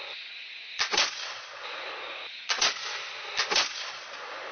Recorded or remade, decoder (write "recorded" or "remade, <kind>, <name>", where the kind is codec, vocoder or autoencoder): recorded